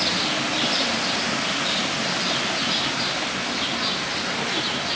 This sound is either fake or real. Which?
real